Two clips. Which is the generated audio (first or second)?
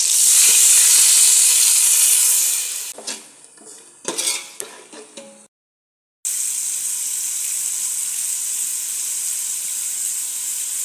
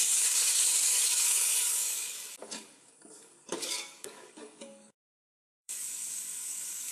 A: second